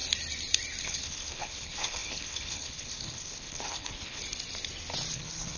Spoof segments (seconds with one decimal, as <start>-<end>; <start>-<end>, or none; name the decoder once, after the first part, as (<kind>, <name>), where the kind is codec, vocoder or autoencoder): 0.8-4.2 (codec, HILCodec); 5.1-5.6